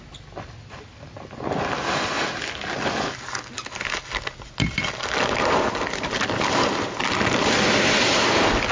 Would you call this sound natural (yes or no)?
yes